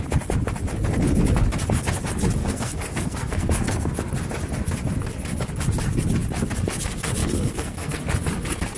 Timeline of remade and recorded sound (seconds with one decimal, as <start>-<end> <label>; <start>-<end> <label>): 0.0-2.4 recorded; 2.4-3.9 remade; 3.9-7.2 recorded; 7.2-8.0 remade; 8.0-8.8 recorded